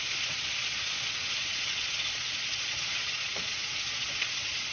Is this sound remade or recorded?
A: remade